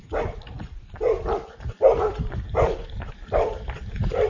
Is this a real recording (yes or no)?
yes